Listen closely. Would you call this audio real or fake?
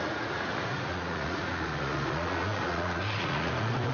fake